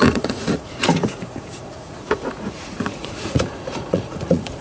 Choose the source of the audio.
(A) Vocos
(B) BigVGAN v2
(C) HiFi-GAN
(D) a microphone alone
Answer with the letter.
A